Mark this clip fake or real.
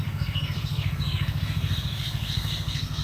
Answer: fake